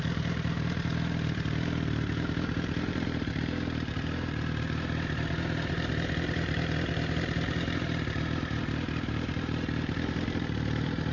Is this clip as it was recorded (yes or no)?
no